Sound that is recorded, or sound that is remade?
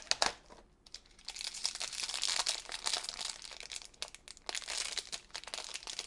recorded